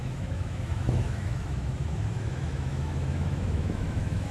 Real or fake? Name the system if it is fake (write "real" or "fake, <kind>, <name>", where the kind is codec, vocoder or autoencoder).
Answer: fake, autoencoder, DAC-VAE